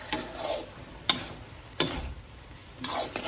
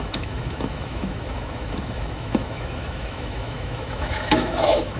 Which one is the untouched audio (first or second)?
first